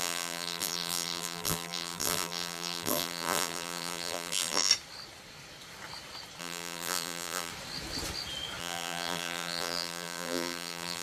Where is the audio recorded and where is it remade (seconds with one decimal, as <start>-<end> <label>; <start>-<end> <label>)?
0.0-4.7 remade; 4.7-6.4 recorded; 6.4-7.5 remade; 7.5-8.6 recorded; 8.6-11.0 remade